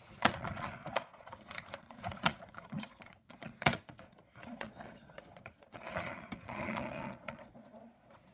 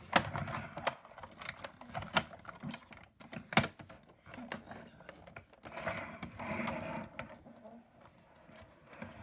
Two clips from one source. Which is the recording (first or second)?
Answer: second